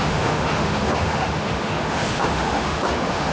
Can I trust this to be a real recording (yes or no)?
no